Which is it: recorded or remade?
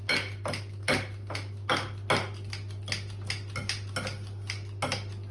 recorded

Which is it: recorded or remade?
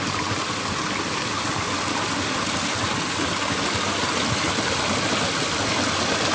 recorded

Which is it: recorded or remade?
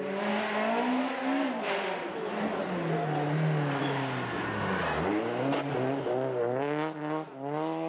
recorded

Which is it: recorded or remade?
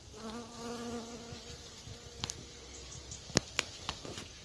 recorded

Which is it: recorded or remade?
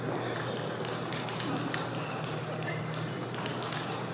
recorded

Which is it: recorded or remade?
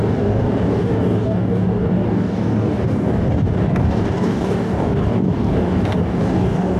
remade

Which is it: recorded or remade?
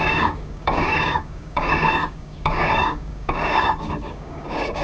remade